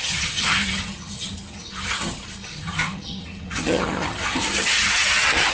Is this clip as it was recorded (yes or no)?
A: no